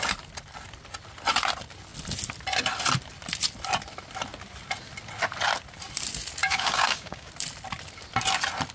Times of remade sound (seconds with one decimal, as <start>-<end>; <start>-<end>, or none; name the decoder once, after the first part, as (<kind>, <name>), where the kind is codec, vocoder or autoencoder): 6.4-7.3 (codec, DAC)

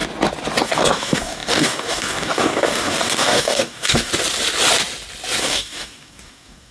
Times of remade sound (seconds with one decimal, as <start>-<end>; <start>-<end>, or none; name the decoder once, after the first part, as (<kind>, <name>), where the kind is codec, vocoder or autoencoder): 0.6-4.1 (codec, DAC); 5.4-6.7